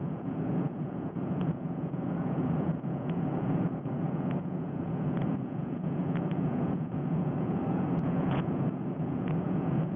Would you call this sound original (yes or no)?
no